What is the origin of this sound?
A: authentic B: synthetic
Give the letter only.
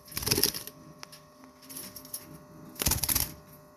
A